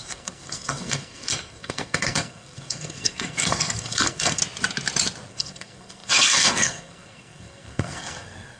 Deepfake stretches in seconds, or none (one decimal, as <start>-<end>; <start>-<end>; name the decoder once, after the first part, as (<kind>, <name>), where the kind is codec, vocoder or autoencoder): 0.0-4.4 (codec, SNAC); 5.3-8.6